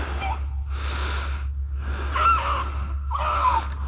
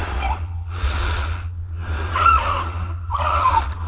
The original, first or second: first